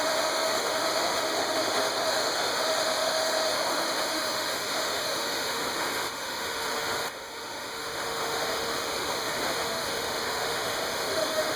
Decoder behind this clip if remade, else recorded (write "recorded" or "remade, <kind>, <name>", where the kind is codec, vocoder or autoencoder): remade, autoencoder, DAC-VAE